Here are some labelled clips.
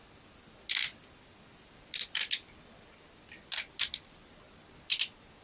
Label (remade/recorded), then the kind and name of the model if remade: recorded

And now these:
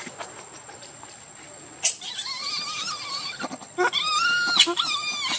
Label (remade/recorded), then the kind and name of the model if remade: recorded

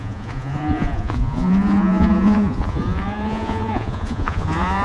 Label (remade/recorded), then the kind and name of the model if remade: remade, vocoder, Vocos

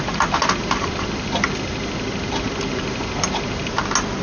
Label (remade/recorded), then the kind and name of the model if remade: recorded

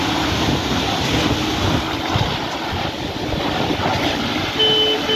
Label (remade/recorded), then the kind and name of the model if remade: recorded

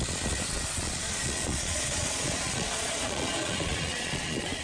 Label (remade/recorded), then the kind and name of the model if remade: remade, vocoder, Vocos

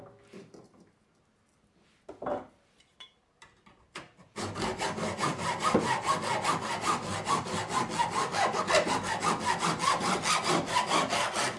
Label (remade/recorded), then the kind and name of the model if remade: recorded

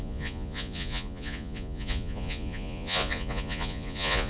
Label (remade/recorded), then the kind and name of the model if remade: remade, vocoder, Vocos